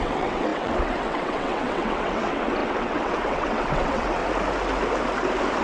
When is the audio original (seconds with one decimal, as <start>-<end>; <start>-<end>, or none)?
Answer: 4.2-5.6